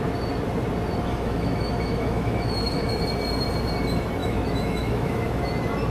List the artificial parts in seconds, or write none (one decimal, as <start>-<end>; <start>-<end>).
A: 1.1-3.0; 4.2-5.4